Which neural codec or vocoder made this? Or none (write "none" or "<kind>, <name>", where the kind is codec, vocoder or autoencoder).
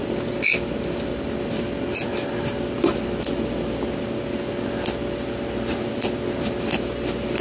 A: none